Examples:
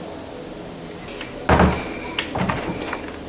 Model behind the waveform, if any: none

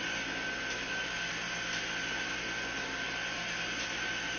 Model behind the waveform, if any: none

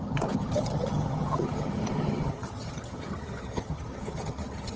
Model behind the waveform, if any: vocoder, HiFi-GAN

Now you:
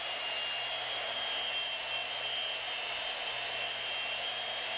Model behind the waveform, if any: none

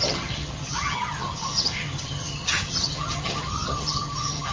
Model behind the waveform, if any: vocoder, HiFi-GAN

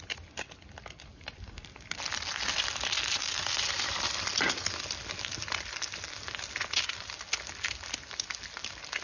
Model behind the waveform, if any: none